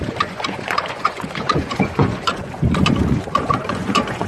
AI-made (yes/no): yes